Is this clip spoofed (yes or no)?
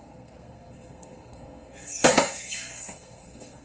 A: yes